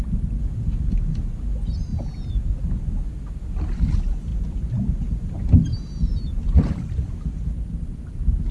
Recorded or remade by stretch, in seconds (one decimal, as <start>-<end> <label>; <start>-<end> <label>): 0.0-8.5 recorded